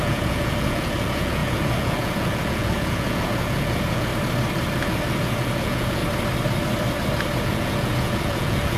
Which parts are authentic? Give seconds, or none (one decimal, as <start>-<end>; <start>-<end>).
4.1-4.8; 6.0-7.4